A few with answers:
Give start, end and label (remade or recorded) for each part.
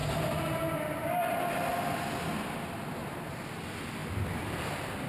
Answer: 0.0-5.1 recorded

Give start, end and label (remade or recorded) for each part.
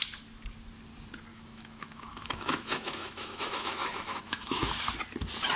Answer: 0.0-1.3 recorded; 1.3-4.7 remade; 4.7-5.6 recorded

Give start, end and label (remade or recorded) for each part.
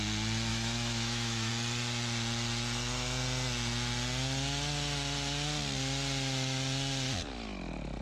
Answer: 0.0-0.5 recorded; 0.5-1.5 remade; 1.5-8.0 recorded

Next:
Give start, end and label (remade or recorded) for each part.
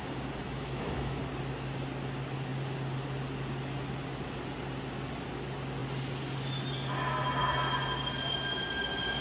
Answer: 0.0-0.4 recorded; 0.4-1.2 remade; 1.2-9.2 recorded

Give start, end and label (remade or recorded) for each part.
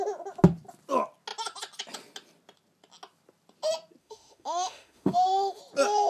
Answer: 0.0-4.0 recorded; 4.0-5.6 remade; 5.6-6.1 recorded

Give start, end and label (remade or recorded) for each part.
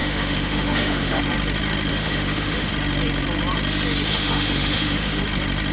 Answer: 0.0-1.2 remade; 1.2-1.9 recorded; 1.9-2.7 remade; 2.7-4.1 recorded; 4.1-5.2 remade; 5.2-5.7 recorded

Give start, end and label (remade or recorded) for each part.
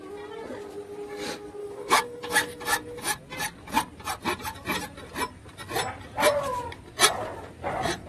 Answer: 0.0-1.6 recorded; 1.6-3.2 remade; 3.2-8.1 recorded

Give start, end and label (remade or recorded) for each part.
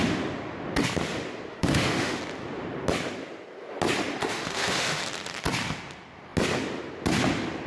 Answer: 0.0-1.5 recorded; 1.5-2.2 remade; 2.2-4.2 recorded; 4.2-5.0 remade; 5.0-7.7 recorded